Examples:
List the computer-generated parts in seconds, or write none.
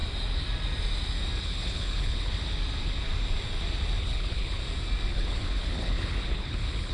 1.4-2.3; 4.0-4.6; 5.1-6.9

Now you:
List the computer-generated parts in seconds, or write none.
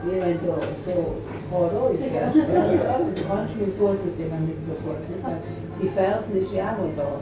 none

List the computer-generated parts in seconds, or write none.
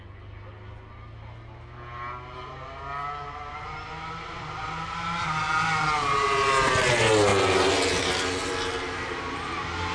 none